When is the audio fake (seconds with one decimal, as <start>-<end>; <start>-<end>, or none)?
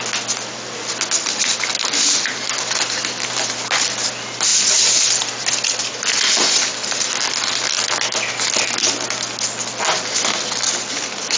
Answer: none